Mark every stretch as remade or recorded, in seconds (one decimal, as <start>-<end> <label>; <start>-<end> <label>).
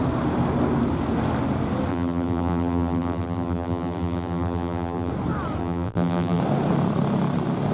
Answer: 0.0-1.9 recorded; 1.9-5.1 remade; 5.1-5.6 recorded; 5.6-6.4 remade; 6.4-7.7 recorded